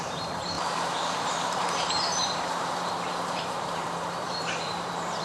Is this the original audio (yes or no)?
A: no